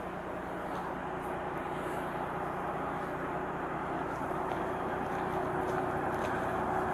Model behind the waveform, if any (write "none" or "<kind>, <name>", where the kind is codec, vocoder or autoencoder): none